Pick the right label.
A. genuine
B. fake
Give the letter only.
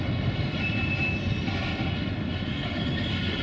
A